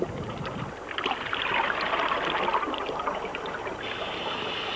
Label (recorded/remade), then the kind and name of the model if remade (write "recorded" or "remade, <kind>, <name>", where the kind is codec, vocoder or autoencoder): recorded